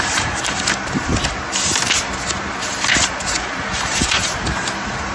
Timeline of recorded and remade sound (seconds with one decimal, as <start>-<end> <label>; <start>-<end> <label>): 0.0-1.1 remade; 1.1-2.9 recorded; 2.9-5.1 remade